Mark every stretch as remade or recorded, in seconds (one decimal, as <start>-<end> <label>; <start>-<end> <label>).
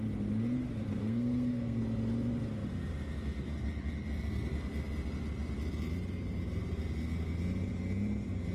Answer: 0.0-1.0 recorded; 1.0-1.8 remade; 1.8-8.5 recorded